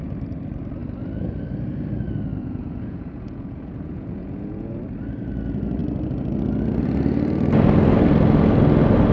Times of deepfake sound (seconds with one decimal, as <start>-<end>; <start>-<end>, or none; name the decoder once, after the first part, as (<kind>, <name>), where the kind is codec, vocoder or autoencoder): 2.4-4.8 (vocoder, Vocos)